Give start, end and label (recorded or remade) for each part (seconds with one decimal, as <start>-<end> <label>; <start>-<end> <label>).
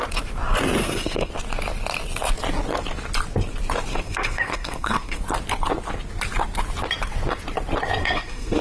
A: 0.0-0.8 recorded; 0.8-1.3 remade; 1.3-3.9 recorded; 3.9-5.2 remade; 5.2-8.0 recorded; 8.0-8.6 remade